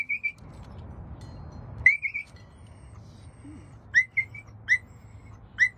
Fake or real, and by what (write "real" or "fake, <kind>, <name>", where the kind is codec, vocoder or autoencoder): real